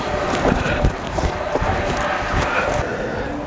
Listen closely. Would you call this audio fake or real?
real